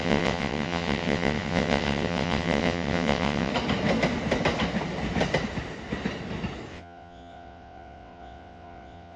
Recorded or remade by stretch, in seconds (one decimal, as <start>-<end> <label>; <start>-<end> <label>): 0.0-3.5 remade; 3.5-6.7 recorded; 6.7-9.2 remade